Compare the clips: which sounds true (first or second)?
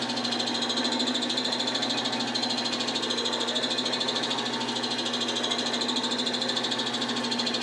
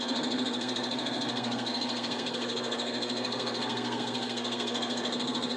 first